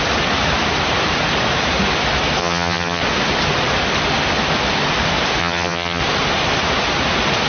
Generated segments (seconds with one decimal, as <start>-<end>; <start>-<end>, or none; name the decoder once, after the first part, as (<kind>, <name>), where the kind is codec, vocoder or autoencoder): 2.4-3.0 (vocoder, HiFi-GAN); 5.4-6.0